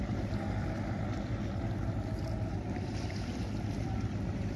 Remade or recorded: recorded